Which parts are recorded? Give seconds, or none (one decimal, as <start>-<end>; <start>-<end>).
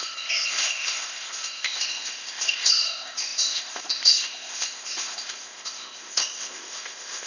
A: none